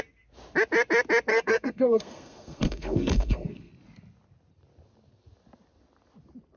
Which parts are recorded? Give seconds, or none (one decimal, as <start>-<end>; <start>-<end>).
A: 0.0-1.3; 3.7-6.6